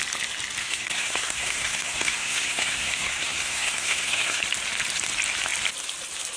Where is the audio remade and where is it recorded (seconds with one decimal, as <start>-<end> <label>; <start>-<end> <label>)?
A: 0.0-0.6 recorded; 0.6-4.4 remade; 4.4-6.4 recorded